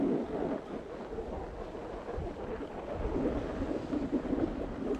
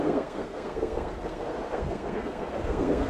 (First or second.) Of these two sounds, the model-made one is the second